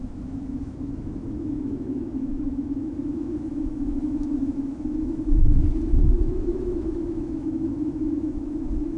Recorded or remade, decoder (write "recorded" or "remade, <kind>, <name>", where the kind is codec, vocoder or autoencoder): remade, autoencoder, DAC-VAE